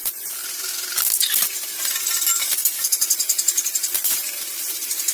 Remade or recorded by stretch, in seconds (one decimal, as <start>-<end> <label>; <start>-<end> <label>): 0.0-0.4 remade; 0.4-2.0 recorded; 2.0-5.1 remade